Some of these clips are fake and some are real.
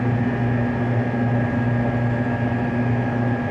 real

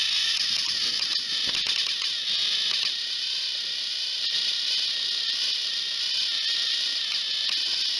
real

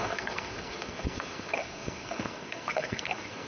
fake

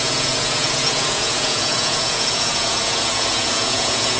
fake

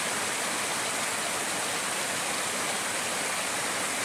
real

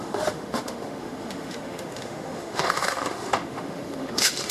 fake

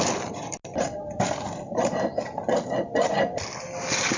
real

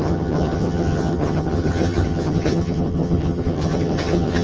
fake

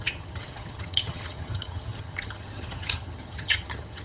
fake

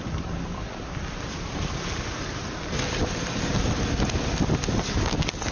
real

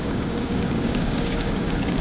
fake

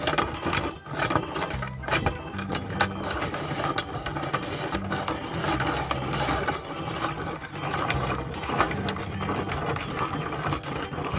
real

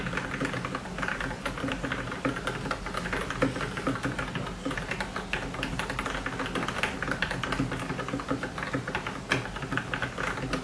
real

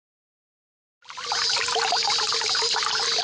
real